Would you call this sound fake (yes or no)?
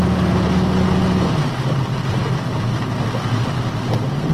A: no